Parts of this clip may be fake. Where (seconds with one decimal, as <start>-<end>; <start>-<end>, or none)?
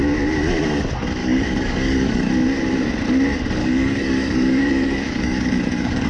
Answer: 1.2-2.3; 3.6-6.1